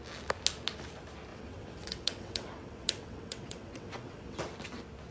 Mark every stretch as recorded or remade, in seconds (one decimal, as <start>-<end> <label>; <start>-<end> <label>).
0.0-1.3 recorded; 1.3-4.4 remade; 4.4-5.1 recorded